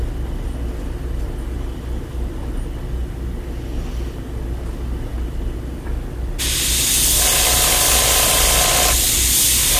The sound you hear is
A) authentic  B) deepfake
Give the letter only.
A